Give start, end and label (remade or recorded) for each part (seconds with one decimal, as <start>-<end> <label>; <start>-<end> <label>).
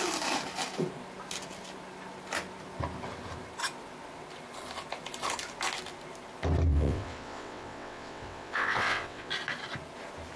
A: 0.0-6.7 recorded; 6.7-9.3 remade; 9.3-10.4 recorded